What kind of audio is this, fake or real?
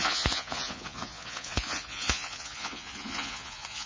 fake